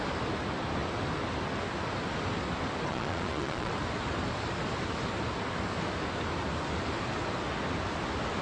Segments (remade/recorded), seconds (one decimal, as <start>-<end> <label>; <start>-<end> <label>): 0.0-2.9 recorded; 2.9-3.7 remade; 3.7-8.4 recorded